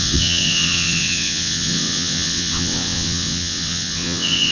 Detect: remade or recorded remade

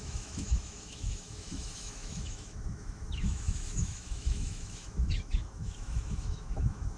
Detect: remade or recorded remade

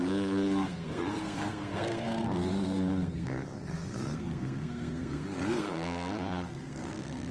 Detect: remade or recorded remade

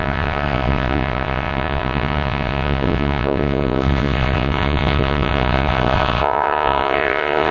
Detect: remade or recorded remade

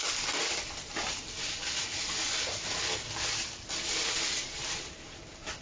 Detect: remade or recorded recorded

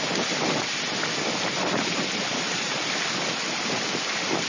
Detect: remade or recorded recorded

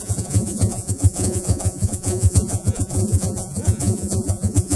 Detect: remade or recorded remade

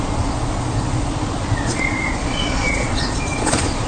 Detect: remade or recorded remade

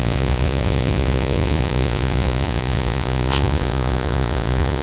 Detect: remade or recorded remade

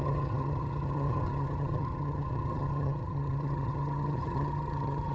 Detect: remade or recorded remade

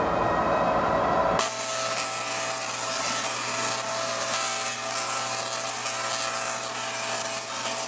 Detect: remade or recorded recorded